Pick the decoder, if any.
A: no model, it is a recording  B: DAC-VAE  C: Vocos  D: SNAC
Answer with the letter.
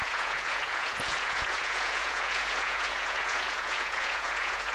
C